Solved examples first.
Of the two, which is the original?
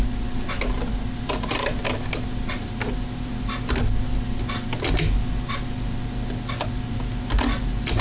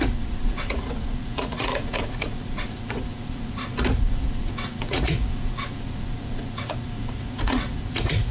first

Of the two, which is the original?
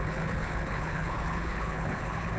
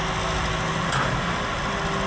second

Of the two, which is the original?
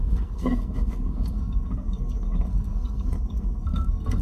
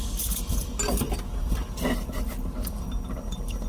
second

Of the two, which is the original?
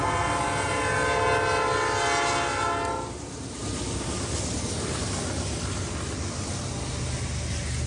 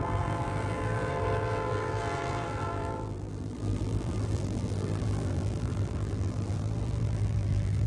first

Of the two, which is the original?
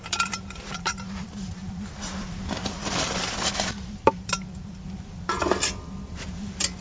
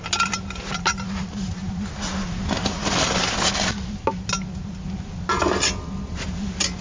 second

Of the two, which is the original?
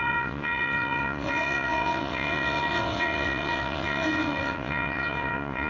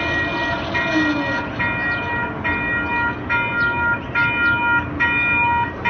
second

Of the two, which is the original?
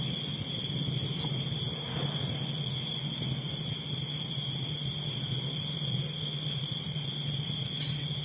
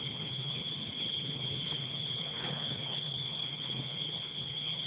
first